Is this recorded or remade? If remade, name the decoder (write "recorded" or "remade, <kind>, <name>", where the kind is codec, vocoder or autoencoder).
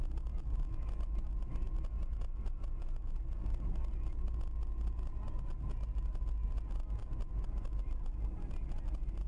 recorded